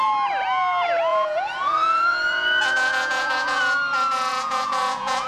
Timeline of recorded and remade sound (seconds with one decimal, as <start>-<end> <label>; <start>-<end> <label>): 0.0-1.1 recorded; 1.1-3.6 remade; 3.6-4.3 recorded; 4.3-5.3 remade